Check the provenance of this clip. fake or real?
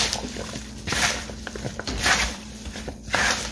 fake